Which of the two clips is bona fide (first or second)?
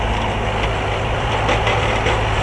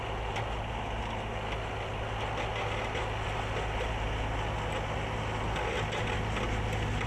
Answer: second